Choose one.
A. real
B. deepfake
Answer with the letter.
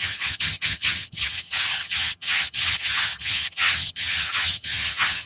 B